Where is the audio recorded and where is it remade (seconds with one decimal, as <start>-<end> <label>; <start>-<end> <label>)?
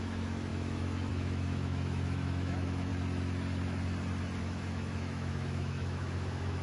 0.0-2.9 remade; 2.9-4.4 recorded; 4.4-6.6 remade